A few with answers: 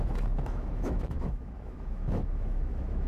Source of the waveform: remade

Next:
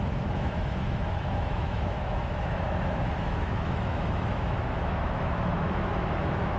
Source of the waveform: remade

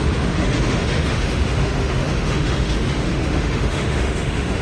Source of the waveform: remade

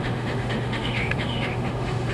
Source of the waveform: remade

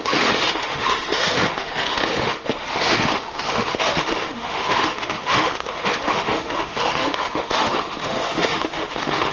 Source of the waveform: remade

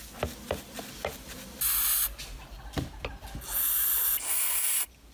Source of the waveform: recorded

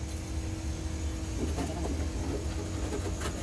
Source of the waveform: recorded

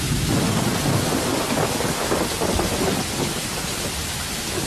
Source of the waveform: recorded